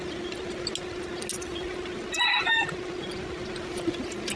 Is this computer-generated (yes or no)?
no